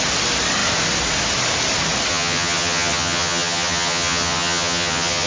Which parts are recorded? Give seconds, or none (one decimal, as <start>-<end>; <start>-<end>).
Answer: 0.0-2.1